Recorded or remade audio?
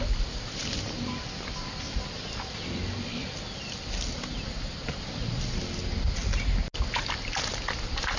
recorded